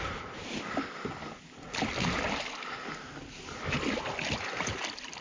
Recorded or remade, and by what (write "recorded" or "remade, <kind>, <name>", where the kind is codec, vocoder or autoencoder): recorded